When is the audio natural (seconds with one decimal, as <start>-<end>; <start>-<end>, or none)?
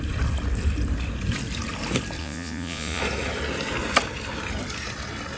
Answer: 0.0-2.2; 3.0-5.4